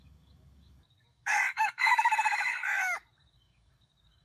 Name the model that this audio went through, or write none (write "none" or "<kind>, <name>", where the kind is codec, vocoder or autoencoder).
codec, DAC